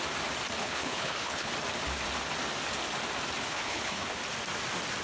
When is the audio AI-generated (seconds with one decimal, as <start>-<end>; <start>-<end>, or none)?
0.6-1.5; 3.5-4.2